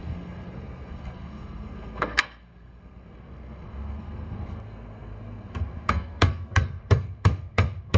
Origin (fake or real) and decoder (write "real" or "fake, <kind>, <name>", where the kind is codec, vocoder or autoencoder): fake, codec, SNAC